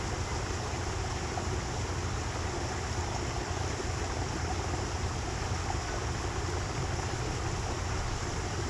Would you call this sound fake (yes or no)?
no